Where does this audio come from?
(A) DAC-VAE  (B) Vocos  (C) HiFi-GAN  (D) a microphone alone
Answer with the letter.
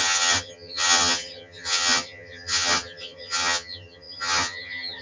C